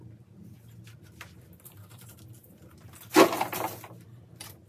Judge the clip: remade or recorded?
recorded